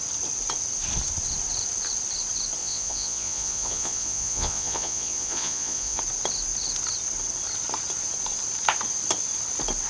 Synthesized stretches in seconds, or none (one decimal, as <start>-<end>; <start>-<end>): 2.6-6.0